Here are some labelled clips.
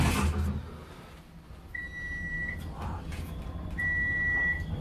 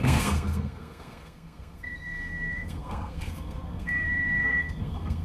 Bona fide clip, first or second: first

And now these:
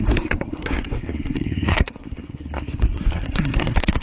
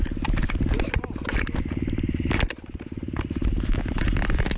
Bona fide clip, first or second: second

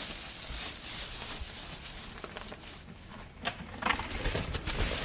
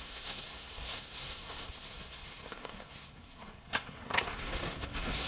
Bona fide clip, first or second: first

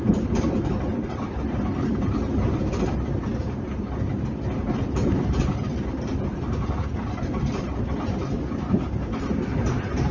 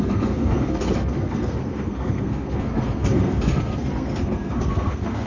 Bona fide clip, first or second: first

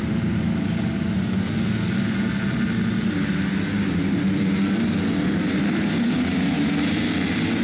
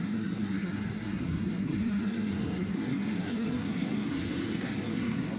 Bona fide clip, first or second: first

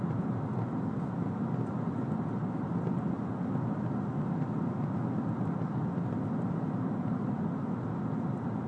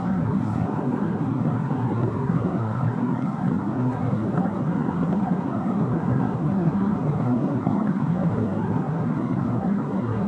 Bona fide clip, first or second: first